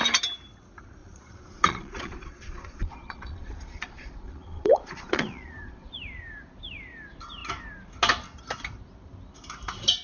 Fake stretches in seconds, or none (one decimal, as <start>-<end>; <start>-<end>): 1.0-5.9